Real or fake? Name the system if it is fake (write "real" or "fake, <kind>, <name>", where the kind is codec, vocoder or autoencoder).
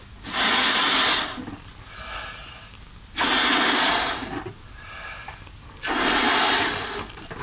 real